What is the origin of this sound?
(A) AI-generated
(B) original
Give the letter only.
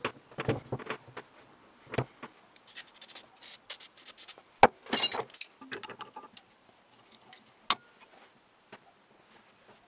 B